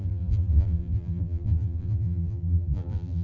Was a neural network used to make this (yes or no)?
yes